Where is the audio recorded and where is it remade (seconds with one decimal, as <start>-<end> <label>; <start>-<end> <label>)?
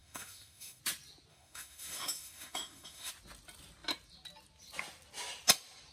0.0-0.8 remade; 0.8-1.3 recorded; 1.3-3.1 remade; 3.1-5.9 recorded